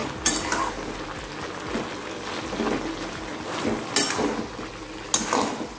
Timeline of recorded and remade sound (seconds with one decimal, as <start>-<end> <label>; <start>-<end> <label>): 0.0-5.8 recorded